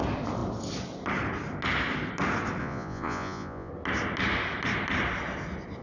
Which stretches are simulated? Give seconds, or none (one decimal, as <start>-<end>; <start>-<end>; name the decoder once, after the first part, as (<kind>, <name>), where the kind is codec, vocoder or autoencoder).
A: 2.6-3.7 (vocoder, Vocos)